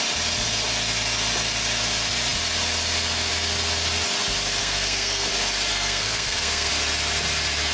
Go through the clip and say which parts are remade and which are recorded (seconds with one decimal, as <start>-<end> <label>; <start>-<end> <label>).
0.0-4.6 recorded; 4.6-5.3 remade; 5.3-5.7 recorded; 5.7-6.7 remade; 6.7-7.7 recorded